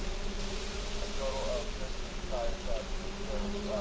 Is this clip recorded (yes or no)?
yes